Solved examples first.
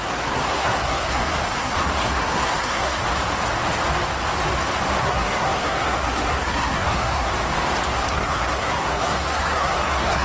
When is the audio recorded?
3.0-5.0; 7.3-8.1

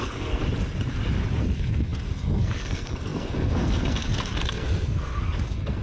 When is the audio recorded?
0.4-1.4

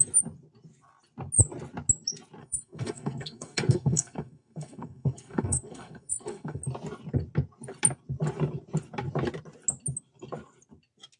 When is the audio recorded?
0.0-2.4; 6.6-11.2

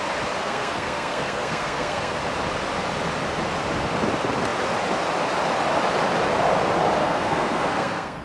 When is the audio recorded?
0.0-0.4; 2.2-7.0

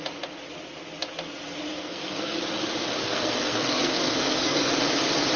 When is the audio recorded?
0.0-1.7; 2.4-3.0; 4.7-5.4

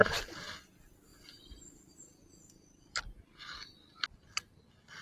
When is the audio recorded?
0.0-5.0

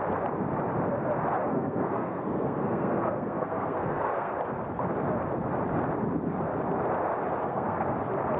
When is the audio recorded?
0.0-1.5; 4.3-7.4; 7.9-8.4

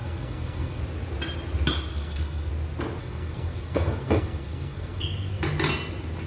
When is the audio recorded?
0.8-1.9; 2.5-3.0; 5.4-6.3